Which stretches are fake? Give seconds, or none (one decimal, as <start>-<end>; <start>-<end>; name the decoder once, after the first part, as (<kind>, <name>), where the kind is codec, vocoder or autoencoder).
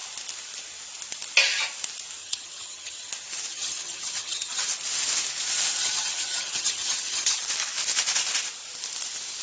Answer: 2.2-3.1 (vocoder, HiFi-GAN); 3.5-4.7; 5.8-7.4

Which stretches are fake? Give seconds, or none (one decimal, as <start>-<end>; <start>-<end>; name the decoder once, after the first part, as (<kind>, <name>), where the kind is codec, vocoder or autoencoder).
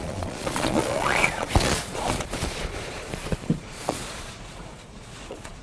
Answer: 0.0-5.6 (vocoder, Vocos)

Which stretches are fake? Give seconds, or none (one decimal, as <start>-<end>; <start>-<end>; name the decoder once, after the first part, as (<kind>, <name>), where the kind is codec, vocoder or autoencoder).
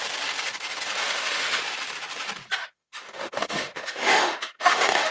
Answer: 1.0-1.6 (autoencoder, DAC-VAE); 2.6-5.1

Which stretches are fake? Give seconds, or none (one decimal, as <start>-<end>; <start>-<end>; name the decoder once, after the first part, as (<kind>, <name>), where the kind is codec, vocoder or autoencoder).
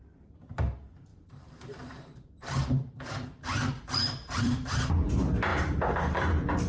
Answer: 1.1-5.1 (vocoder, BigVGAN v2); 5.5-6.2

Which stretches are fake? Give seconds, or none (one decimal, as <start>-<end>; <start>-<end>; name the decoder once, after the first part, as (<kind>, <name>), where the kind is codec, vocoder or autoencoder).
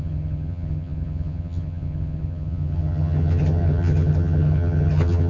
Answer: 0.0-5.3 (vocoder, HiFi-GAN)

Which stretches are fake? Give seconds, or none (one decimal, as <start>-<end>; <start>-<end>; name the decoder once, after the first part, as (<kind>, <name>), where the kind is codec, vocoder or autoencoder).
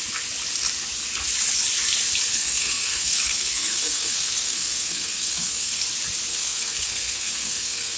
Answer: 2.3-5.8 (codec, SNAC); 6.3-8.0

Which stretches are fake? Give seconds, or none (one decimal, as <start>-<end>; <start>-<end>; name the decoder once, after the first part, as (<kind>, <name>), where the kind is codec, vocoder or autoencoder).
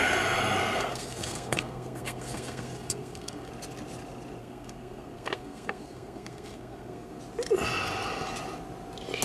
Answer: 0.6-3.5 (codec, SNAC); 4.4-7.2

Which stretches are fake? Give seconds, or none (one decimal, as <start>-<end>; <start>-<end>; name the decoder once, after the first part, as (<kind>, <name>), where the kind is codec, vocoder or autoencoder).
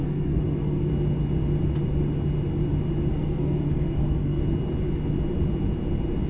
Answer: 0.0-0.9 (codec, SNAC); 3.1-4.4